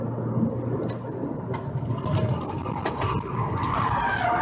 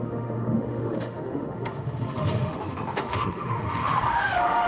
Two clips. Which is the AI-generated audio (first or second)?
second